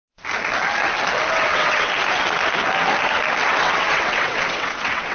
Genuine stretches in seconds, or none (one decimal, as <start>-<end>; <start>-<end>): 0.0-1.3; 1.9-3.5